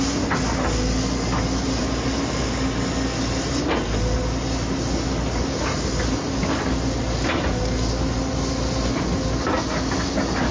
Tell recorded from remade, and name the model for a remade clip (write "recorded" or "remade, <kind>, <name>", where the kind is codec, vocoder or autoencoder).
recorded